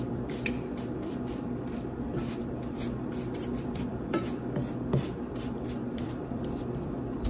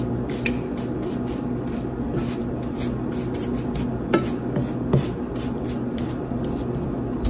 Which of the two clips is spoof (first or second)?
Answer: first